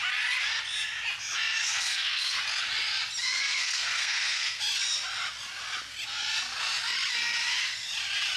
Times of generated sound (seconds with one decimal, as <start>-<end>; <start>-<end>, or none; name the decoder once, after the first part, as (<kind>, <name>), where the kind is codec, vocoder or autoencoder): 1.6-2.4 (codec, SNAC); 3.2-4.6